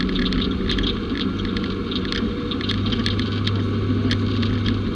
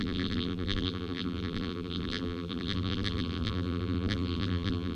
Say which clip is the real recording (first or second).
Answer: first